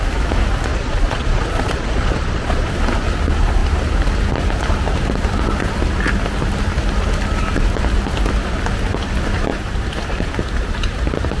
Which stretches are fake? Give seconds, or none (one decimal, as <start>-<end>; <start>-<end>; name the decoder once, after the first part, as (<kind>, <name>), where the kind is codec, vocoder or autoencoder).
0.7-2.7 (vocoder, Vocos)